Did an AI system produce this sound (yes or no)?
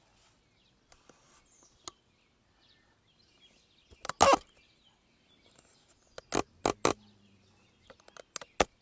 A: no